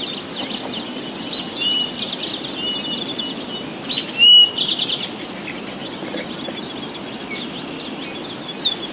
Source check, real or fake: real